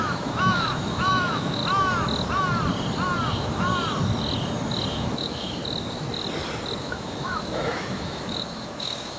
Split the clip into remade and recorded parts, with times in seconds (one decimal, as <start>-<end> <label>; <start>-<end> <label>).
0.0-1.6 remade; 1.6-3.3 recorded; 3.3-3.7 remade; 3.7-4.9 recorded; 4.9-5.6 remade; 5.6-6.8 recorded; 6.8-9.2 remade